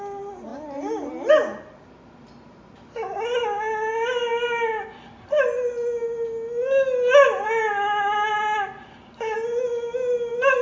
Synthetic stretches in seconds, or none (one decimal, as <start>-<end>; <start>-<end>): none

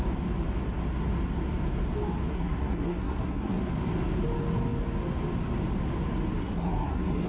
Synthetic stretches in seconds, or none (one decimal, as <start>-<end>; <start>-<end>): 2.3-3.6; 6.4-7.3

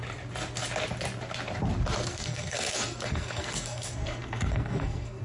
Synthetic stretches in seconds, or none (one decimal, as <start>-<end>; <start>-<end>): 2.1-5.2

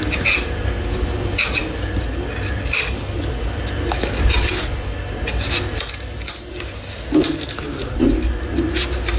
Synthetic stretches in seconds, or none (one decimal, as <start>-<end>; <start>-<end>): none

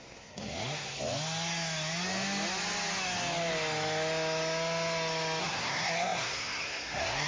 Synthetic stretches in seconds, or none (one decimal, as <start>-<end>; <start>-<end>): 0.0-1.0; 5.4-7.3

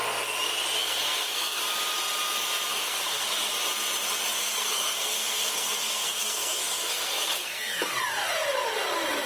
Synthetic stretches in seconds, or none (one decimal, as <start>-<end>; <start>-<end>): 0.8-1.6; 2.7-3.5; 4.4-7.9